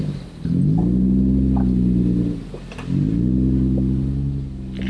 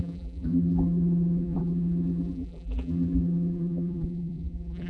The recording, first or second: first